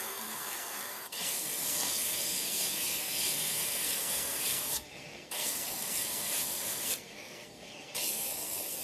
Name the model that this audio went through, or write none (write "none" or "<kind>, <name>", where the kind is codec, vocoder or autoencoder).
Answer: codec, SNAC